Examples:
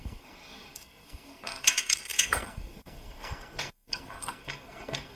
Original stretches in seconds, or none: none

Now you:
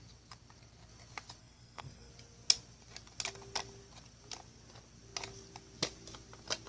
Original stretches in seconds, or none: 0.0-1.4; 2.1-6.7